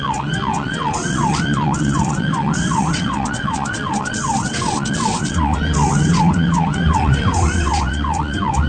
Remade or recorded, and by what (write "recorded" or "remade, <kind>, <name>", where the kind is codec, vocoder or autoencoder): remade, vocoder, WaveNeXt